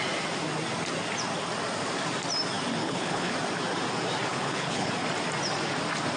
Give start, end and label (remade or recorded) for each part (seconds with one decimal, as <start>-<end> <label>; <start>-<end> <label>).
0.0-2.8 recorded; 2.8-3.3 remade; 3.3-4.3 recorded; 4.3-4.9 remade; 4.9-6.2 recorded